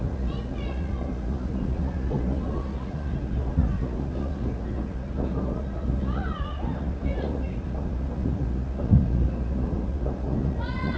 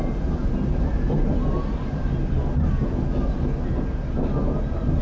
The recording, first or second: second